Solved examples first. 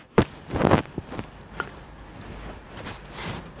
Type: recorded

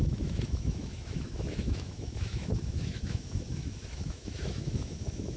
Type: remade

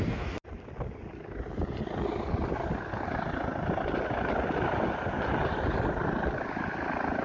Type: recorded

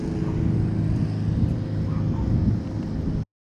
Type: recorded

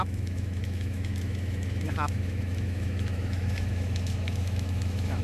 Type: remade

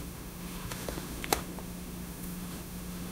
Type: remade